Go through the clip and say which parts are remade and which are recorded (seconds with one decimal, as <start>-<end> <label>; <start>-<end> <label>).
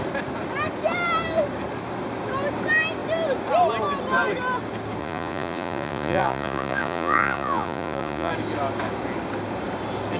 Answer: 0.0-5.0 recorded; 5.0-8.3 remade; 8.3-10.2 recorded